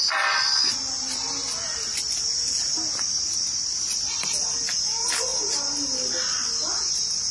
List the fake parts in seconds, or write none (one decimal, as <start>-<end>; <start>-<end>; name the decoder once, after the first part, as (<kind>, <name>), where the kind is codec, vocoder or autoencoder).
none